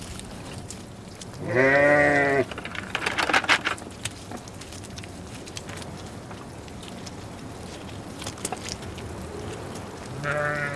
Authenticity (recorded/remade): recorded